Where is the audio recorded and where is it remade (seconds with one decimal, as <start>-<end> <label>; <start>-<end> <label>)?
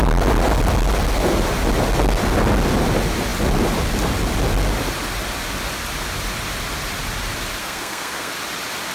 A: 0.0-7.6 recorded; 7.6-8.3 remade; 8.3-8.9 recorded